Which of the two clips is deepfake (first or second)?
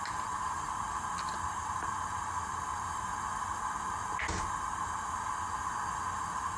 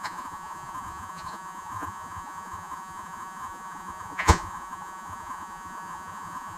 second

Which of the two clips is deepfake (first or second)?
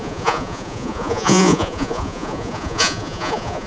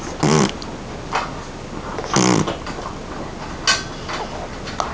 first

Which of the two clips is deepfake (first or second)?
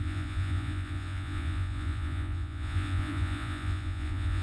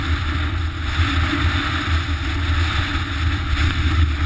first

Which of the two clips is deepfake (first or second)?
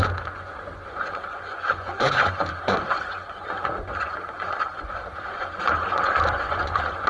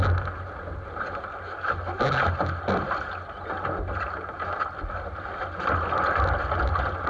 first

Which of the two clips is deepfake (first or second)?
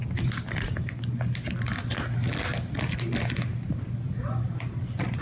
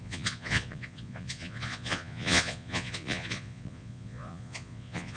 second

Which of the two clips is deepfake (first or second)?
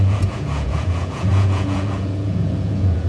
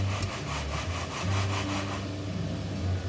first